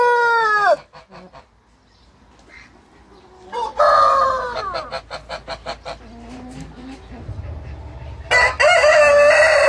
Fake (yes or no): no